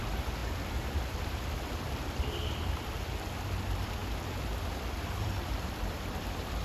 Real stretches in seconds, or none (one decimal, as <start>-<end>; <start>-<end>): none